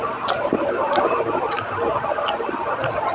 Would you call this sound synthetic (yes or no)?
no